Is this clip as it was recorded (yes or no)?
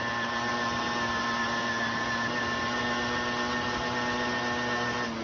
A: yes